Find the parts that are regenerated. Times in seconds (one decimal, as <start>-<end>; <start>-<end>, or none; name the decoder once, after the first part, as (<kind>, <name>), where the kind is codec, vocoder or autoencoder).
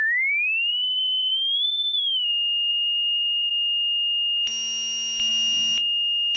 0.7-2.3 (vocoder, BigVGAN v2); 2.7-3.5